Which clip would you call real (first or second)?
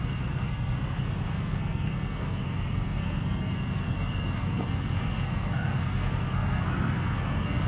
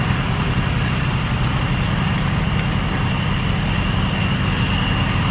second